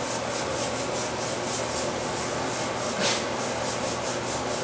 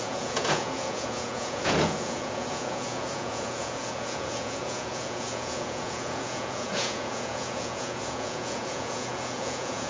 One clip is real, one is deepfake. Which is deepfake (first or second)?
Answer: second